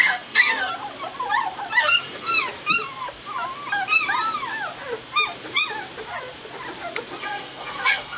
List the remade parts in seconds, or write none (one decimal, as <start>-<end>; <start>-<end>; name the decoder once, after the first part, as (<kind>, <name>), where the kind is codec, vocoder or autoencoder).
0.0-0.7 (codec, SNAC); 1.8-2.3; 7.2-8.2

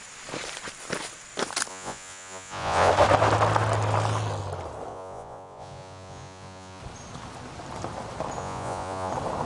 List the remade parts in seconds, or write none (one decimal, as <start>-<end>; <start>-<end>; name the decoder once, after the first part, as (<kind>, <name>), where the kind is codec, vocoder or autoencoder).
1.7-2.9 (vocoder, Vocos); 4.9-6.8; 8.4-9.1